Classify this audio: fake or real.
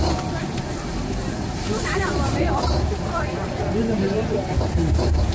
fake